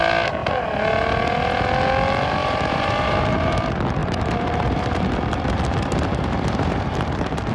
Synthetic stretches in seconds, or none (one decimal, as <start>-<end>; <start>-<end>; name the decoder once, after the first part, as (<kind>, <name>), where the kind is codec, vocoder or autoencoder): 2.4-3.6 (vocoder, BigVGAN v2); 4.0-7.5